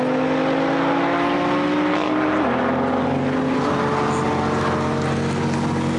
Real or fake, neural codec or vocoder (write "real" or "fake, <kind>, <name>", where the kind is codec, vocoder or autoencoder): real